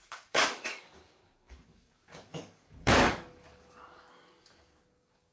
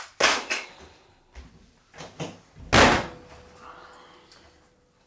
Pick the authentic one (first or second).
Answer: second